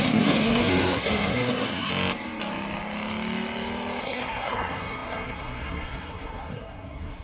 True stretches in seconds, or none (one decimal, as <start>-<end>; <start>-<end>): 1.9-4.0